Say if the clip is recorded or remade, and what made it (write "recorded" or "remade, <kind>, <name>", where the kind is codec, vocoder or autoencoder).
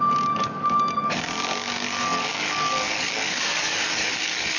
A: remade, codec, DAC